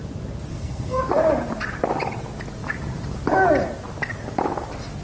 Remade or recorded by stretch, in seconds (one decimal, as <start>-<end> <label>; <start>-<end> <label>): 0.0-0.5 recorded; 0.5-1.0 remade; 1.0-5.0 recorded